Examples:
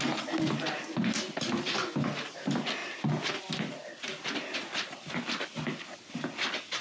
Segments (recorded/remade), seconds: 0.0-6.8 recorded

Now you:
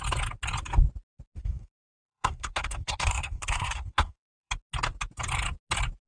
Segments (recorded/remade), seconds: 0.0-1.4 recorded; 1.4-4.5 remade; 4.5-6.1 recorded

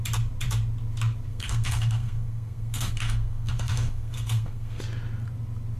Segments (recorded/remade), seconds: 0.0-1.3 recorded; 1.3-4.8 remade; 4.8-5.8 recorded

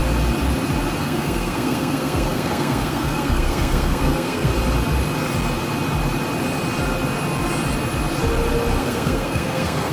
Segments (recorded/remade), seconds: 0.0-1.0 recorded; 1.0-4.5 remade; 4.5-8.8 recorded; 8.8-9.9 remade

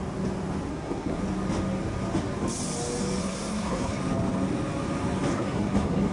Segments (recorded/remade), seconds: 0.0-0.7 recorded; 0.7-1.2 remade; 1.2-3.2 recorded; 3.2-4.0 remade; 4.0-5.3 recorded; 5.3-6.1 remade

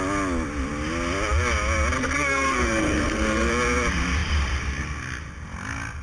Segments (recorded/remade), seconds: 0.0-2.0 recorded; 2.0-3.5 remade; 3.5-6.0 recorded

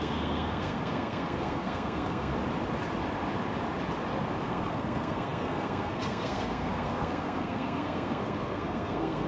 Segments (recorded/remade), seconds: 0.0-2.3 remade; 2.3-4.4 recorded; 4.4-9.3 remade